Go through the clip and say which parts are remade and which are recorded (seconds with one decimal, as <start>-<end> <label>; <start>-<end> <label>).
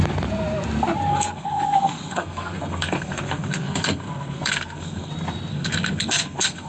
0.0-1.1 recorded; 1.1-5.1 remade; 5.1-5.5 recorded; 5.5-6.7 remade